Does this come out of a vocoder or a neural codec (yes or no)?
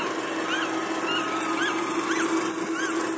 no